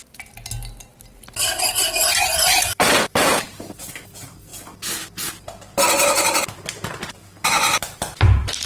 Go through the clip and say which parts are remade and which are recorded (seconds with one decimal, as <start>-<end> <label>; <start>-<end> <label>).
0.0-0.9 recorded; 0.9-3.4 remade; 3.4-5.7 recorded; 5.7-8.7 remade